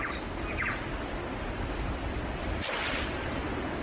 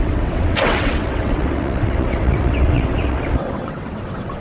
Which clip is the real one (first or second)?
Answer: first